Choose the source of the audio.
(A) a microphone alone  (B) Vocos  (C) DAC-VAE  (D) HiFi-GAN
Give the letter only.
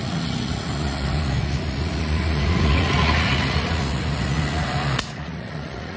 B